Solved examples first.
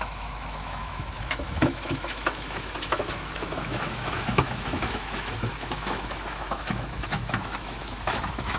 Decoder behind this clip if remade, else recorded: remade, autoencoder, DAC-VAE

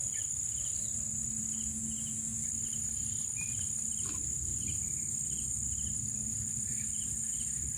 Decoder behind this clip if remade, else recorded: recorded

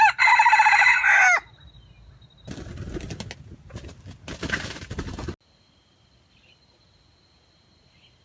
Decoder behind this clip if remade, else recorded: recorded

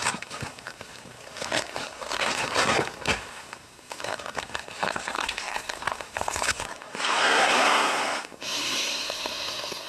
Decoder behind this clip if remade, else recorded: remade, codec, SNAC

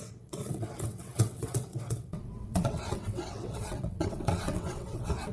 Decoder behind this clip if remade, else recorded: remade, vocoder, WaveNeXt